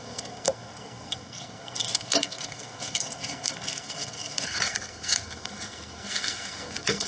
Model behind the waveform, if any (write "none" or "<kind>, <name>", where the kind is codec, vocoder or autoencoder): codec, SNAC